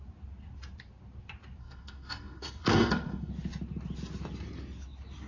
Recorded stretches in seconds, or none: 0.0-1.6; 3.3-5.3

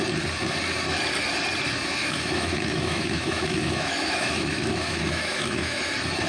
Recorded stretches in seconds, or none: 0.0-2.0; 5.8-6.3

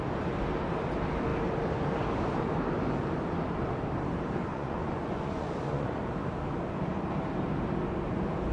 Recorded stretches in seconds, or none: 0.0-4.5; 6.0-8.5

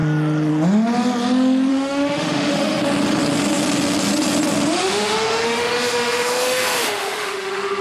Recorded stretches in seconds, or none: 0.0-1.7; 2.8-4.8

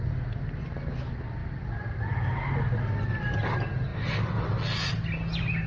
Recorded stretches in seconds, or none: 0.0-5.7

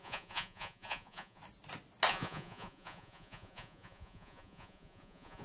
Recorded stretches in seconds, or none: 1.4-2.1

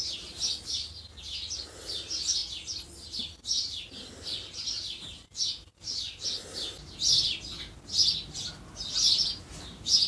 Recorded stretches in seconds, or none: 0.0-10.1

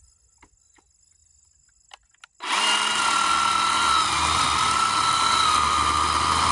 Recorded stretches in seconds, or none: 0.0-6.5